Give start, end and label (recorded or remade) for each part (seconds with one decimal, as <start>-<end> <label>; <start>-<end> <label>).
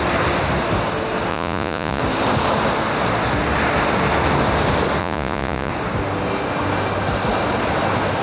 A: 0.0-1.3 recorded; 1.3-2.0 remade; 2.0-5.0 recorded; 5.0-5.7 remade; 5.7-8.2 recorded